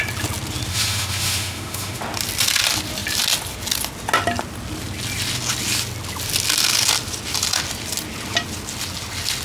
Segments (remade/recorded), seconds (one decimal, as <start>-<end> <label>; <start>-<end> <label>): 0.0-0.7 recorded; 0.7-2.0 remade; 2.0-9.4 recorded